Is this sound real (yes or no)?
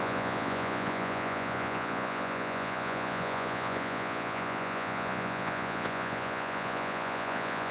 no